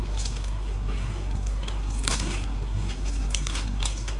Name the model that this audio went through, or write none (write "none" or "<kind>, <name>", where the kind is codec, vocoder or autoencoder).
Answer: codec, SNAC